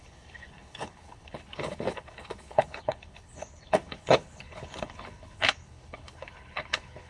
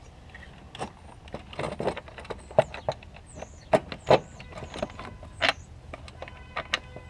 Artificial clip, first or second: first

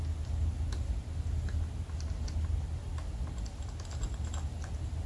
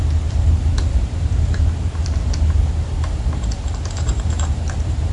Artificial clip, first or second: second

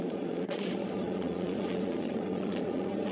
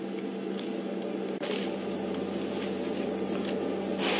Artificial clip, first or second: first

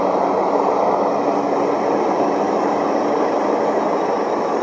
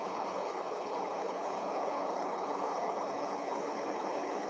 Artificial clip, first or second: second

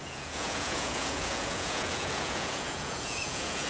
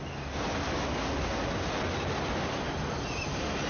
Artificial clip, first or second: first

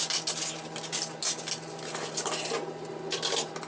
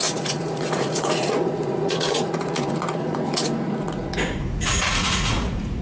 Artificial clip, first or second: second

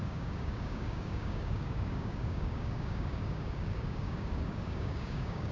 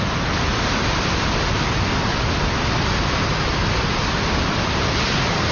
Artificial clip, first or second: first